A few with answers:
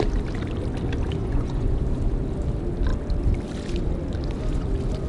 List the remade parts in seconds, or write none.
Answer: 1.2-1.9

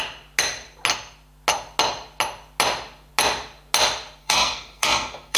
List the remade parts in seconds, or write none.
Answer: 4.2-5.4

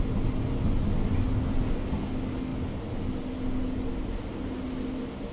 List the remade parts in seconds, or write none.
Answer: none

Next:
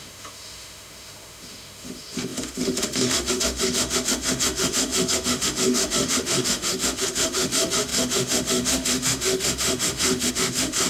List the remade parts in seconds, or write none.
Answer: 0.0-10.9